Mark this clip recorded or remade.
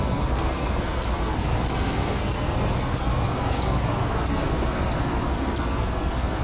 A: remade